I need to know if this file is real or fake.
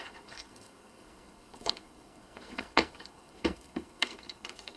fake